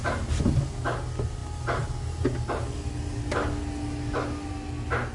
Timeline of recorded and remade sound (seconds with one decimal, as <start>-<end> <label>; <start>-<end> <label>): 0.0-5.1 recorded